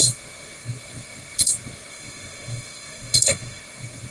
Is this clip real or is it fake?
fake